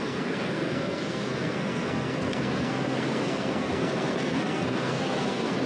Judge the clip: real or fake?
fake